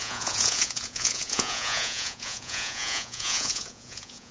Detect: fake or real fake